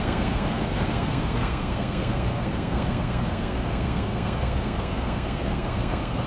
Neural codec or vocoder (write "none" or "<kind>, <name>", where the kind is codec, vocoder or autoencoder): codec, SNAC